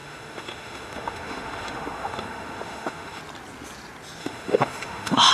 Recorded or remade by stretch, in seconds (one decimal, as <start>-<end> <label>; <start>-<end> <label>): 0.0-3.2 remade; 3.2-4.2 recorded; 4.2-5.3 remade